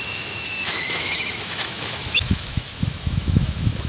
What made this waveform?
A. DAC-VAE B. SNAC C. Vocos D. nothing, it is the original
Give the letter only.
A